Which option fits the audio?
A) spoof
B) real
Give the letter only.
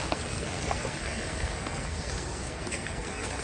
A